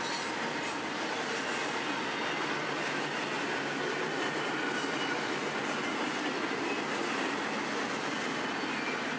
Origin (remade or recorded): recorded